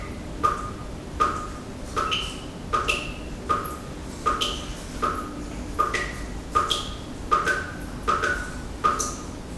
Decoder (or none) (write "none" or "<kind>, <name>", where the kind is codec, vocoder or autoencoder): none